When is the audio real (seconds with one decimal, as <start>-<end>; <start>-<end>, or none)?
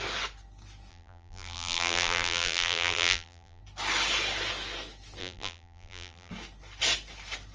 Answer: 0.0-0.9; 3.6-5.2; 6.3-7.5